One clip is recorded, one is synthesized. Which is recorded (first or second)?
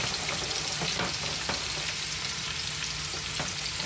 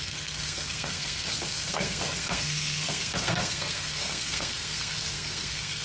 first